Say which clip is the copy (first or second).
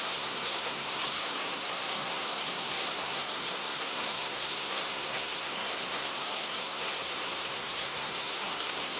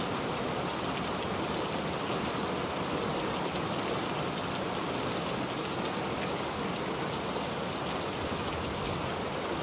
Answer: first